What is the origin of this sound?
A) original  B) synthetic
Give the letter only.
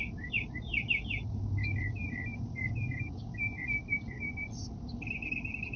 A